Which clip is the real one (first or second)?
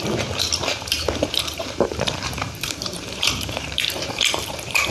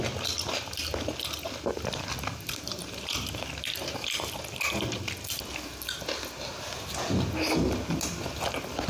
second